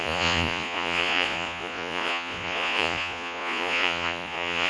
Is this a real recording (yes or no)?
no